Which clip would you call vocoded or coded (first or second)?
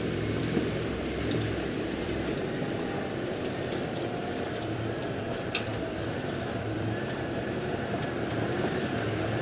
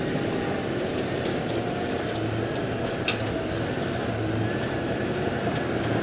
first